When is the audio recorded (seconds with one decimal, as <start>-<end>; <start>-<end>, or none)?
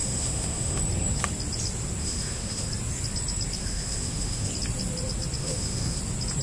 0.8-2.0; 2.7-3.6; 4.5-5.4; 6.0-6.4